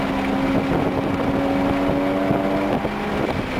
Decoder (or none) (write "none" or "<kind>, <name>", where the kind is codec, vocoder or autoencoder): none